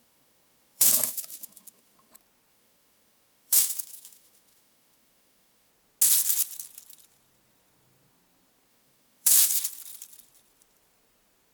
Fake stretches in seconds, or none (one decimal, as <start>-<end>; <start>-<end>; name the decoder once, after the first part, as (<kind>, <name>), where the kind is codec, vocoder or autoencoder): 0.0-2.1 (autoencoder, DAC-VAE); 2.5-5.7; 8.7-9.6